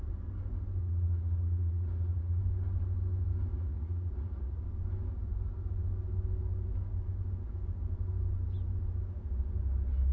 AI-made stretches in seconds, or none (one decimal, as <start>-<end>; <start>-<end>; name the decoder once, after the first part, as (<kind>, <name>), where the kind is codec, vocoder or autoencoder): 0.8-2.4 (vocoder, Vocos); 3.5-4.6